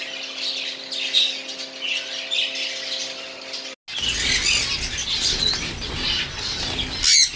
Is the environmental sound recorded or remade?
recorded